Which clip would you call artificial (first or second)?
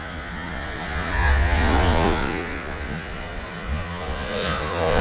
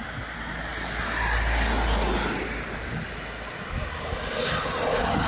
first